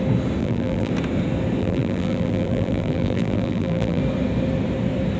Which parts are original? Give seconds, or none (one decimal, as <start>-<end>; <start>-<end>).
0.0-0.4; 0.9-1.6; 4.0-5.2